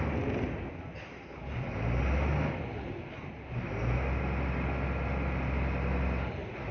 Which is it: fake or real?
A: real